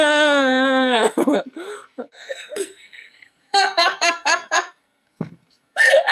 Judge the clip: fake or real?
fake